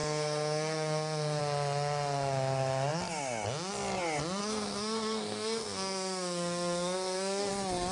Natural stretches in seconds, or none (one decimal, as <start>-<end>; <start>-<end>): 1.4-4.4; 7.5-7.9